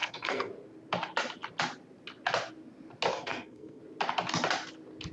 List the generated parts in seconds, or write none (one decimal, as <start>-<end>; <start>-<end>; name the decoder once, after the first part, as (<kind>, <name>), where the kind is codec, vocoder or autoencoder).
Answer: 0.0-0.5 (codec, SNAC); 3.1-3.8